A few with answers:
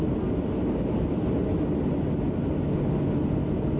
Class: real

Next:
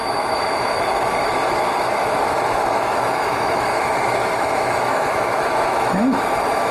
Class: fake